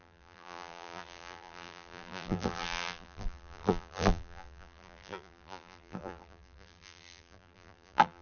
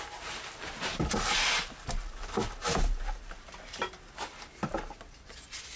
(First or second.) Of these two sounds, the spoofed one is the first